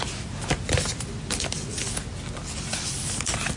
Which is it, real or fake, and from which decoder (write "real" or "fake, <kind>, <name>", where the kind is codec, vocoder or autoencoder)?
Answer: real